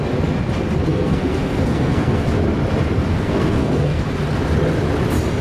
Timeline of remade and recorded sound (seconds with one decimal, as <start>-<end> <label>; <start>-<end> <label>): 0.0-0.9 recorded; 0.9-2.3 remade; 2.3-3.1 recorded; 3.1-4.0 remade; 4.0-5.4 recorded